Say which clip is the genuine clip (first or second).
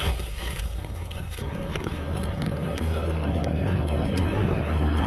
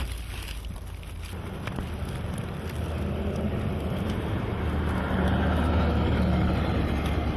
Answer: second